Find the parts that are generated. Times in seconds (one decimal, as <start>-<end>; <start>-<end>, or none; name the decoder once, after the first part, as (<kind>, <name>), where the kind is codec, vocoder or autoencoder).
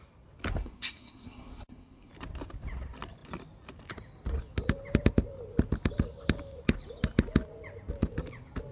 0.6-2.1 (codec, SNAC)